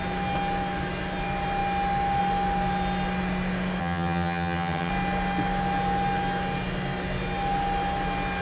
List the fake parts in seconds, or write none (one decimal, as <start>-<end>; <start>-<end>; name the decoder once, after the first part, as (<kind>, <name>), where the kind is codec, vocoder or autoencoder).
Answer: 3.8-4.9 (vocoder, HiFi-GAN)